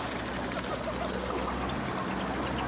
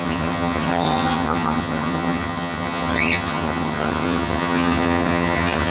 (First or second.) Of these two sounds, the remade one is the second